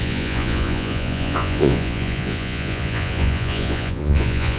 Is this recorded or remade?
remade